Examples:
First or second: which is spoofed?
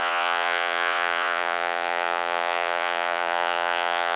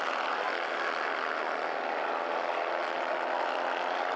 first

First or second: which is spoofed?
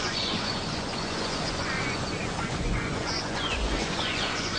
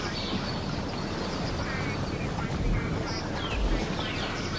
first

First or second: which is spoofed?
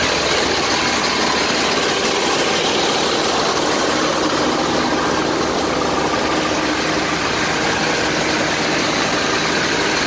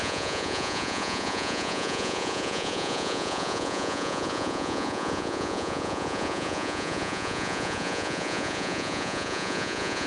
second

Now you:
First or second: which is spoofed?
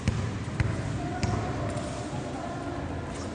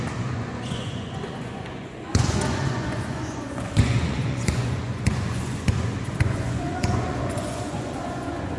second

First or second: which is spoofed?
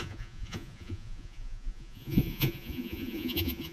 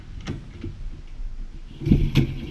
first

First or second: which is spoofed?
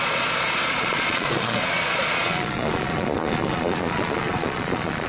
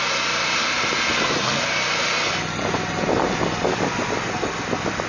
first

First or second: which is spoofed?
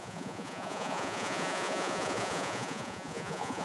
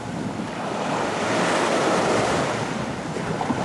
first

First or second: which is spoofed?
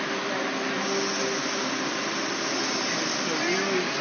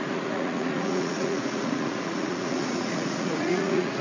second